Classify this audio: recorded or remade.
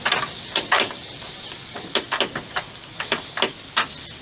recorded